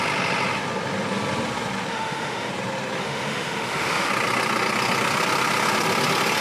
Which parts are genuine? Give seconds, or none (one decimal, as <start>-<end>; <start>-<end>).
0.0-1.9; 2.5-3.0; 4.1-6.4